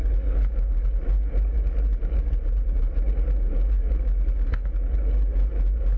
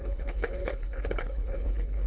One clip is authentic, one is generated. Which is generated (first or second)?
second